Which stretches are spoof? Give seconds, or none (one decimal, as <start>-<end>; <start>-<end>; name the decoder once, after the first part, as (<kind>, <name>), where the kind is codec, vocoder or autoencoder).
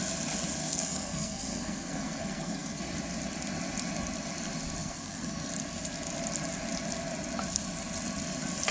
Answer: 0.6-2.8 (codec, SNAC); 4.8-5.5